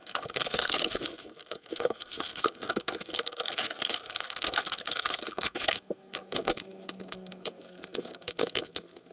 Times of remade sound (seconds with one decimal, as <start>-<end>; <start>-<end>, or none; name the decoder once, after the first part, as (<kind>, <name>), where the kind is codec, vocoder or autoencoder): 0.0-9.1 (codec, SNAC)